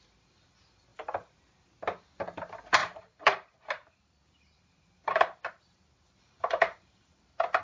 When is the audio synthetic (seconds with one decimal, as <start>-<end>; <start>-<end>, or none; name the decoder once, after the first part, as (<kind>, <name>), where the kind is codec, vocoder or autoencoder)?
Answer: 0.9-1.4 (vocoder, BigVGAN v2); 2.8-7.6